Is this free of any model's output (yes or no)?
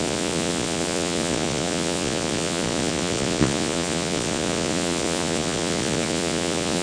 no